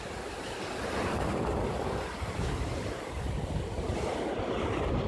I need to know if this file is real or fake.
real